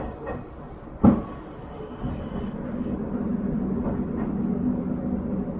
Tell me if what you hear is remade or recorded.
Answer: recorded